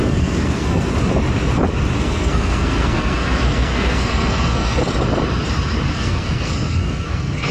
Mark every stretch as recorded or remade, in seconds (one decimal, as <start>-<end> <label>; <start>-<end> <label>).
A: 0.0-0.9 remade; 0.9-2.0 recorded; 2.0-4.8 remade; 4.8-5.9 recorded; 5.9-7.5 remade